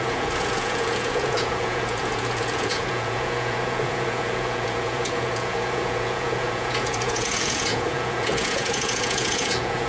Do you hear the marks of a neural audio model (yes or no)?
yes